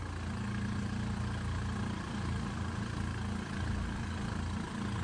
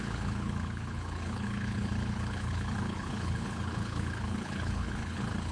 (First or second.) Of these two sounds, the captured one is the first